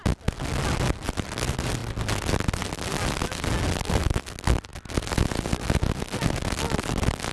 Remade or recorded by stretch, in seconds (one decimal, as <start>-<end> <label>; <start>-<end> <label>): 0.0-7.3 recorded